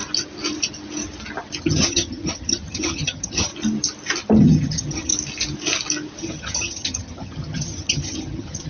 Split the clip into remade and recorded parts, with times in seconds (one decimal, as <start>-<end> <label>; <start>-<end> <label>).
0.0-1.6 recorded; 1.6-3.5 remade; 3.5-4.4 recorded; 4.4-5.1 remade; 5.1-6.2 recorded; 6.2-8.7 remade